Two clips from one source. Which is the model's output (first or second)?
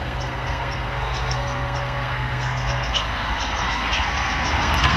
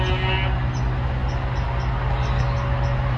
first